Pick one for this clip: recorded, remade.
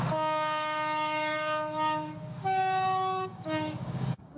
remade